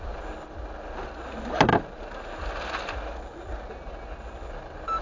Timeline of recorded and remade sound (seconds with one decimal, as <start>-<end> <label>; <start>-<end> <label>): 0.0-5.0 recorded